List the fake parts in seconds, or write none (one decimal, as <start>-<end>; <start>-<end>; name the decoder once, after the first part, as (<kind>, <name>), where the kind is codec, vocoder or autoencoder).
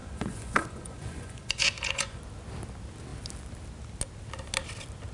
0.0-2.2 (vocoder, Vocos)